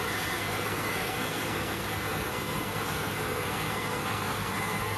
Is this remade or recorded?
remade